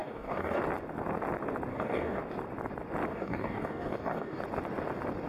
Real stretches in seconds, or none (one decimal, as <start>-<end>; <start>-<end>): 0.6-1.7; 2.2-3.1; 4.4-5.3